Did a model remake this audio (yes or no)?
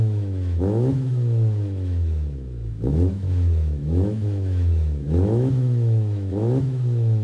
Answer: yes